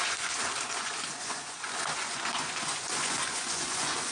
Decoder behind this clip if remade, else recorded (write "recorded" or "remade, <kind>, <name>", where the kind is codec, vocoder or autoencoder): remade, vocoder, Vocos